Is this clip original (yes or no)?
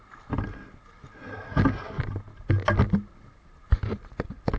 yes